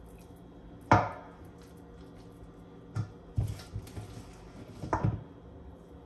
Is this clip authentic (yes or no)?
yes